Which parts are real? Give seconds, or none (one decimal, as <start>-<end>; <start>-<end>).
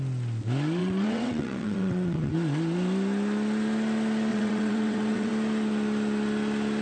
0.0-0.8; 2.3-4.3; 5.3-6.8